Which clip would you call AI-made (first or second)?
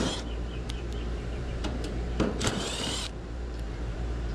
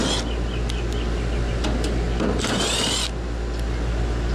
first